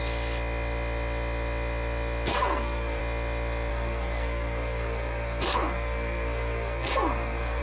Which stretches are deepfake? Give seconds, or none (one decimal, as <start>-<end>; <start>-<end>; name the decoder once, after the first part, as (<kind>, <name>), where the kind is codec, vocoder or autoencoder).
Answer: 2.3-3.0 (codec, SNAC); 3.7-7.6